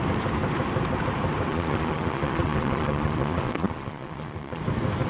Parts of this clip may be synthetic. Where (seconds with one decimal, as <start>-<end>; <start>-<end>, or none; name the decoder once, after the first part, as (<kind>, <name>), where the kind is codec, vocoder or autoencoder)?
1.5-4.6 (vocoder, Vocos)